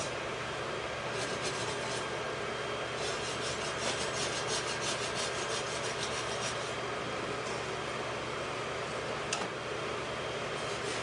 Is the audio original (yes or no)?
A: yes